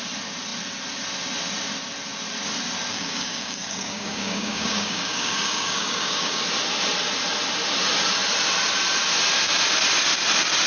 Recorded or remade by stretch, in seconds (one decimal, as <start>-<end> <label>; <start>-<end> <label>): 0.0-2.9 recorded; 2.9-6.4 remade; 6.4-10.7 recorded